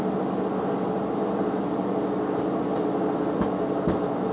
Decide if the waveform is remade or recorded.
recorded